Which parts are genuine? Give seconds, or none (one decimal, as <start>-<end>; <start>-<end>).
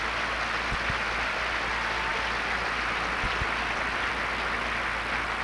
0.0-5.4